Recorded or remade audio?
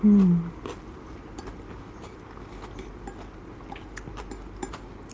recorded